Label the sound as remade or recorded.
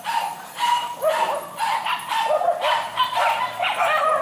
recorded